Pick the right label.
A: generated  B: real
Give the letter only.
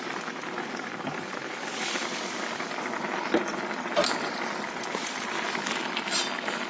A